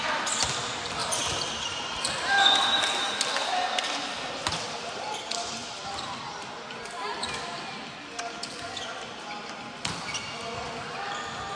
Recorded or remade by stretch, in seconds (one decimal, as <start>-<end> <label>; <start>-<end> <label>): 0.0-1.0 recorded; 1.0-2.7 remade; 2.7-5.6 recorded; 5.6-6.2 remade; 6.2-11.6 recorded